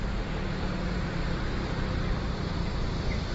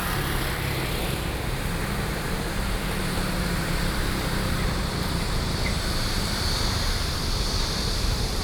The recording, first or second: first